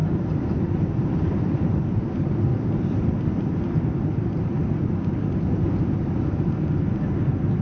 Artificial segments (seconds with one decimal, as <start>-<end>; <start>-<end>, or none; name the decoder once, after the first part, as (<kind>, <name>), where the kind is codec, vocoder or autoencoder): 0.0-2.0 (vocoder, BigVGAN v2); 2.5-6.5